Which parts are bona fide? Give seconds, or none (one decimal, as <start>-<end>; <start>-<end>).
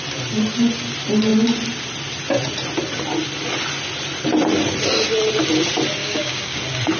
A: 0.0-6.0; 6.6-7.0